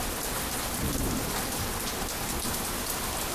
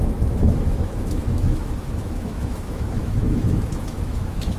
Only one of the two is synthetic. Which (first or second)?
second